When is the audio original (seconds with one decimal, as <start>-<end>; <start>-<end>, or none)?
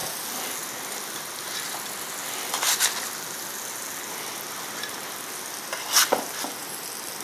0.0-7.2